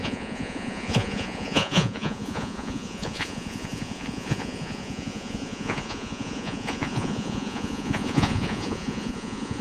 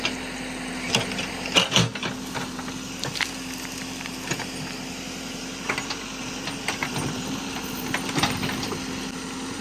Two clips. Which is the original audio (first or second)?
second